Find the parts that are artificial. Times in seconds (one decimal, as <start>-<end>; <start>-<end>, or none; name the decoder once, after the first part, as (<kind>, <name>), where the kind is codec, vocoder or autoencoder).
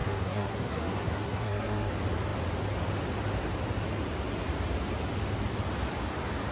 0.0-1.9 (codec, SNAC)